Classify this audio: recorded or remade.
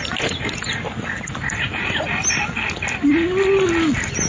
recorded